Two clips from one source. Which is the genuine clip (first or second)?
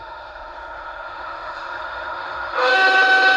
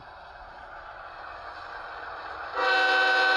second